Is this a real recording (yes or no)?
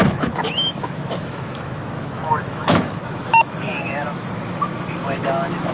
no